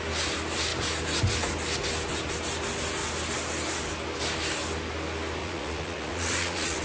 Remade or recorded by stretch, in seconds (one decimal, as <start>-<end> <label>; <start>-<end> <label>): 0.0-5.4 recorded; 5.4-6.8 remade